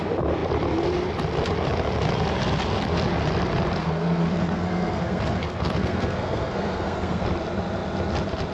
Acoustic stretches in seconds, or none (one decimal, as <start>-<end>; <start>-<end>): 0.0-3.8; 7.2-8.5